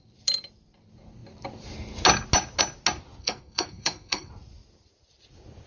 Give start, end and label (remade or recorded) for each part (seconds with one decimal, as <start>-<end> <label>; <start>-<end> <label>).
0.0-3.2 recorded; 3.2-4.3 remade; 4.3-5.7 recorded